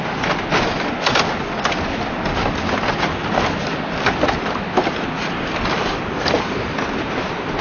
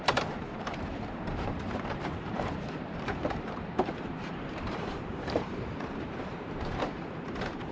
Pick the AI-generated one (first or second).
second